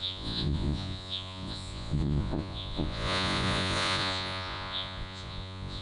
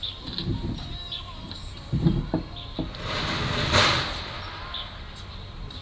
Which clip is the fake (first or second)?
first